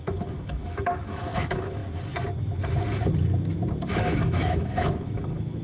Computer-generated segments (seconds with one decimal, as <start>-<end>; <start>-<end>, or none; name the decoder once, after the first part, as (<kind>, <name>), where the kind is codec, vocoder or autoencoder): 0.0-1.8 (autoencoder, DAC-VAE); 3.9-5.6